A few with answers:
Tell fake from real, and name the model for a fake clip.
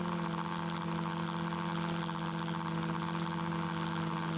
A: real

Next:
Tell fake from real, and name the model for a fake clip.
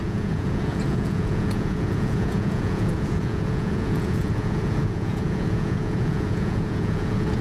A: fake, vocoder, Vocos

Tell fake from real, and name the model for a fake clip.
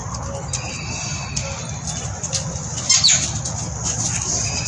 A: real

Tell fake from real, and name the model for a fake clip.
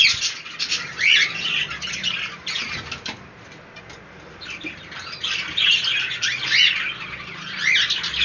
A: real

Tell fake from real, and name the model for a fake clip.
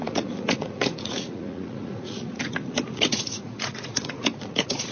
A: fake, vocoder, Vocos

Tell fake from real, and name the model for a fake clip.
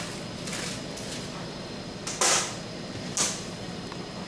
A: real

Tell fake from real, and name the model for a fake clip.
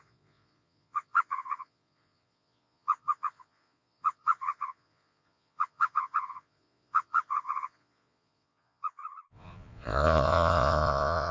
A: fake, vocoder, Vocos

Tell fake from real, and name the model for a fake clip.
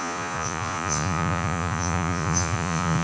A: fake, vocoder, Vocos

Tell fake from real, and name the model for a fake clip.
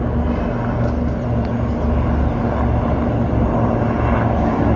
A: real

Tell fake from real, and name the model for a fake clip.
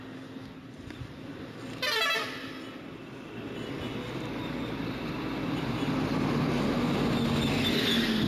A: real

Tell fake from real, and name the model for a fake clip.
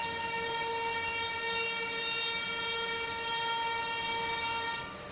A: real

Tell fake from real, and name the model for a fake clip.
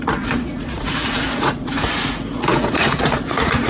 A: fake, vocoder, Vocos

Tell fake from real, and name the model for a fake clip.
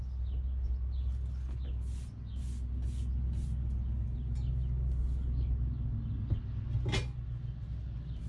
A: real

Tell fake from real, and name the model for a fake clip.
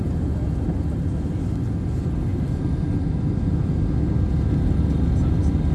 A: real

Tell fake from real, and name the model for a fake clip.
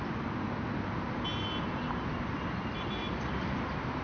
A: real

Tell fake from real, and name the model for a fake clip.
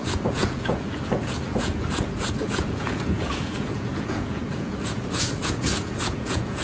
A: fake, vocoder, Vocos